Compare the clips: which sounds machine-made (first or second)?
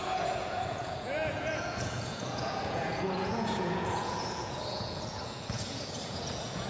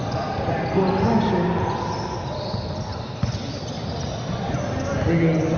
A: first